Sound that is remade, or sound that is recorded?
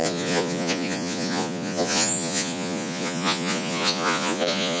remade